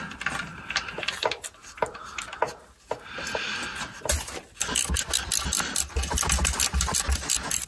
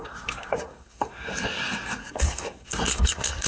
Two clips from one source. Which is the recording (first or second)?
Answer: first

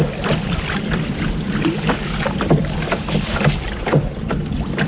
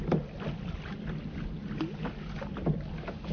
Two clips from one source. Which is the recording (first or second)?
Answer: second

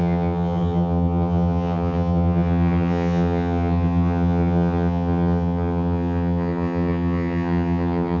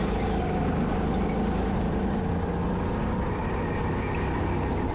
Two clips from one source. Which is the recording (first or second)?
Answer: second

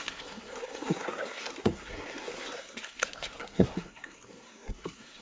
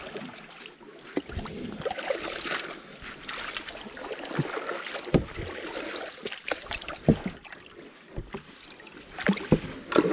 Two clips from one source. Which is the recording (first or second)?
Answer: second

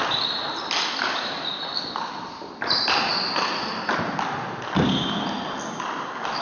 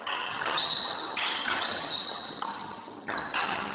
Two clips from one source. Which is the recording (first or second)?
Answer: first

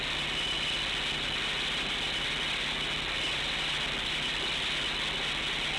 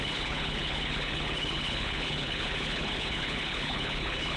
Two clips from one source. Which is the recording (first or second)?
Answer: first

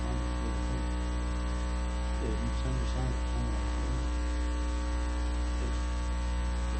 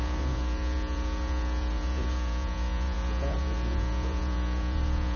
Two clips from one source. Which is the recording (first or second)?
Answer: first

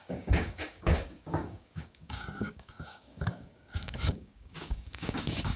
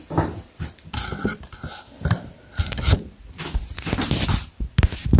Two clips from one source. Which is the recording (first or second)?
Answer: second